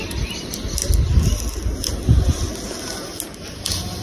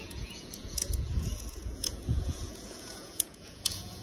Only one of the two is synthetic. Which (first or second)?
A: second